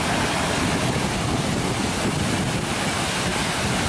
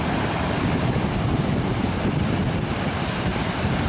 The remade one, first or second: second